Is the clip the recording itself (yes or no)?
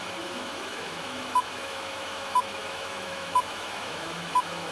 no